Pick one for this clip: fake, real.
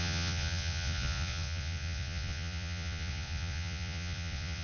fake